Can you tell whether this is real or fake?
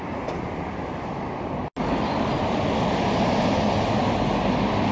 real